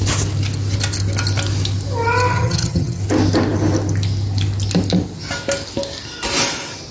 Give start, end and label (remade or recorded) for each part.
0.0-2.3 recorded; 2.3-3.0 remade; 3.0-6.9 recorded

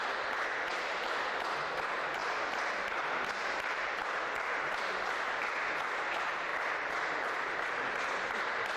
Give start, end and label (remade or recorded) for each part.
0.0-8.8 recorded

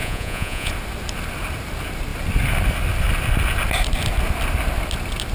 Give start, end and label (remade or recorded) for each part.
0.0-0.7 remade; 0.7-5.3 recorded

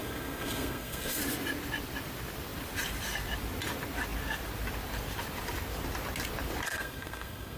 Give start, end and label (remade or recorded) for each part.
0.0-1.2 remade; 1.2-6.7 recorded; 6.7-7.6 remade

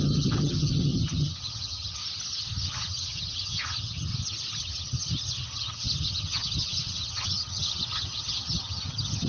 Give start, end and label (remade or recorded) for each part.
0.0-2.0 remade; 2.0-2.6 recorded; 2.6-4.1 remade; 4.1-4.6 recorded; 4.6-9.3 remade